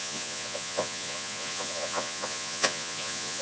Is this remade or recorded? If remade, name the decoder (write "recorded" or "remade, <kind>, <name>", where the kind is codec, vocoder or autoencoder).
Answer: remade, vocoder, Vocos